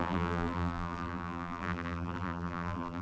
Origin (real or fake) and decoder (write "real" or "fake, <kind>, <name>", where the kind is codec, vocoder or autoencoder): fake, vocoder, BigVGAN v2